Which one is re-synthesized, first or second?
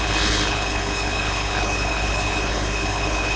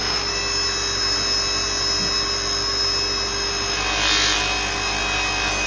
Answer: first